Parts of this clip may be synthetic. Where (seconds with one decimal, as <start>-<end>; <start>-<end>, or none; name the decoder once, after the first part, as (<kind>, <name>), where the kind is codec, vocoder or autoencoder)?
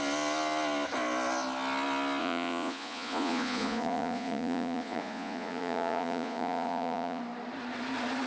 2.2-7.2 (vocoder, Vocos)